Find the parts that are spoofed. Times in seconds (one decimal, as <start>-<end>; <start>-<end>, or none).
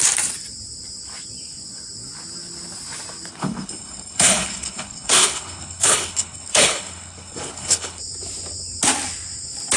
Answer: 3.3-8.0